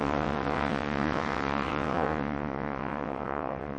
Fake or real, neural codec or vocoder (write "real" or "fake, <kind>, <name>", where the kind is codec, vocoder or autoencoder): fake, vocoder, WaveNeXt